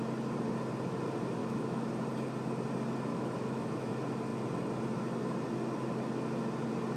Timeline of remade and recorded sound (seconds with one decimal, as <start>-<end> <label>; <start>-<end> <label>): 0.0-1.4 recorded; 1.4-1.9 remade; 1.9-3.1 recorded; 3.1-3.9 remade; 3.9-7.0 recorded